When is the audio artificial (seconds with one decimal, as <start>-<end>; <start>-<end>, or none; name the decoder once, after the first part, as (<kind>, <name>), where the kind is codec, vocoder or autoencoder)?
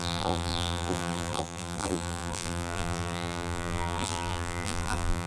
0.0-5.3 (vocoder, BigVGAN v2)